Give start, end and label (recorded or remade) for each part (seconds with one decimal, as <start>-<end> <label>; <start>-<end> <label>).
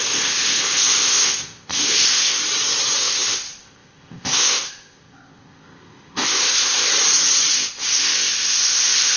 0.0-2.4 remade; 2.4-3.0 recorded; 3.0-6.9 remade; 6.9-7.5 recorded; 7.5-9.2 remade